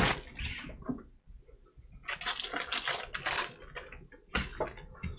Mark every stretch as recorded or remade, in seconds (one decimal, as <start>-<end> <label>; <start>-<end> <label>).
0.0-5.2 recorded